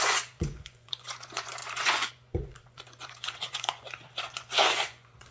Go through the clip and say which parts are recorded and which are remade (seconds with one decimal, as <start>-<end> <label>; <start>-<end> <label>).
0.0-5.3 remade